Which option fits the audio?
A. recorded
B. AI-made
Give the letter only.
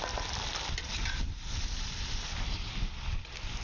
A